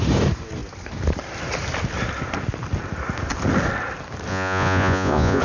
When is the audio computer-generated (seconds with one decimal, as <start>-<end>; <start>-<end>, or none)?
4.3-5.4